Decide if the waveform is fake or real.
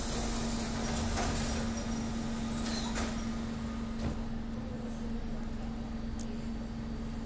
real